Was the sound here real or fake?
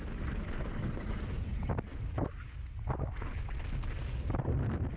real